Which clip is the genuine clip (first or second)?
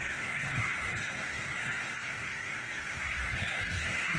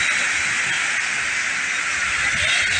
second